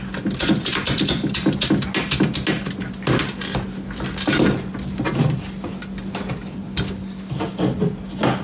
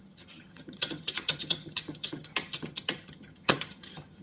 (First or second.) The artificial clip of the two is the second